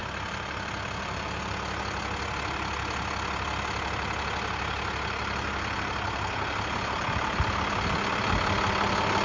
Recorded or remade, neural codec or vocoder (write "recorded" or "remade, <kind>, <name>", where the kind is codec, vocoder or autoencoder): recorded